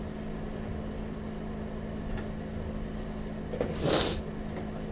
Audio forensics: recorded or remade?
recorded